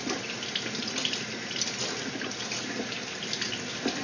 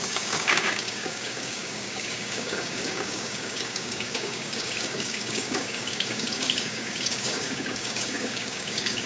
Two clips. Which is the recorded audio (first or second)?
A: first